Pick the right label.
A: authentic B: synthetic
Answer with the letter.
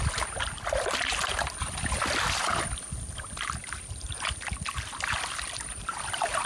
B